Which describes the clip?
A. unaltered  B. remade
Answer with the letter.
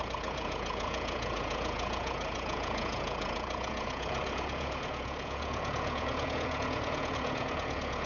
B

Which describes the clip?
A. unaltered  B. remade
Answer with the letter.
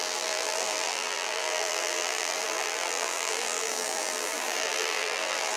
B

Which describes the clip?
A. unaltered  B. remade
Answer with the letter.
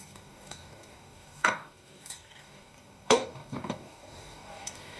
B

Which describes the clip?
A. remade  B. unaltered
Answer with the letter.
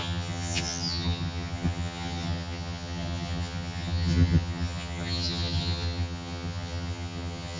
A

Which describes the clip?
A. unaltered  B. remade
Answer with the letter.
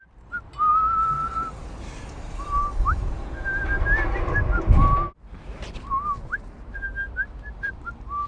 A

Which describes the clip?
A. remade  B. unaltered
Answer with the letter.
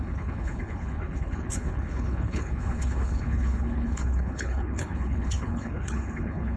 A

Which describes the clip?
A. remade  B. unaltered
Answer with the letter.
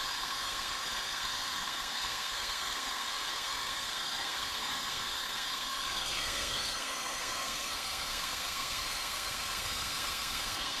A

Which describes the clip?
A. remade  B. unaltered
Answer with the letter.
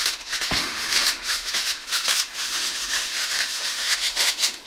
A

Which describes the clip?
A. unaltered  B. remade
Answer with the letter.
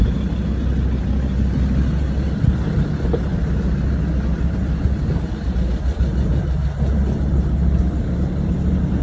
A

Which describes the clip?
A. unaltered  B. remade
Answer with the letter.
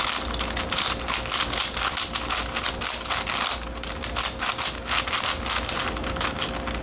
A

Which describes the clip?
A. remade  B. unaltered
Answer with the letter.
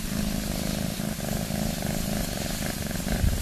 B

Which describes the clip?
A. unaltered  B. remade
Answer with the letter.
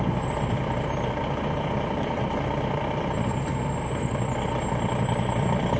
A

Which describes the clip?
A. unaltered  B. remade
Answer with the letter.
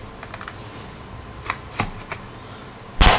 A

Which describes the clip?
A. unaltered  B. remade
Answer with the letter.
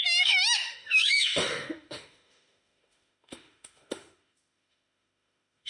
B